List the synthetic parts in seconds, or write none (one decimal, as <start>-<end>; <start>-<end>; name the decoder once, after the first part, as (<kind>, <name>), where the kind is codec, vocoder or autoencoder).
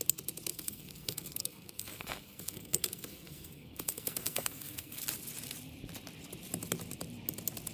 0.5-5.0 (codec, SNAC)